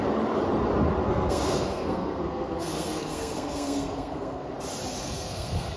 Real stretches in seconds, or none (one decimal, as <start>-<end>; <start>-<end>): 0.0-1.0; 4.5-5.0